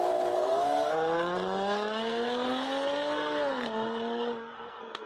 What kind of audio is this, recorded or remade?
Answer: remade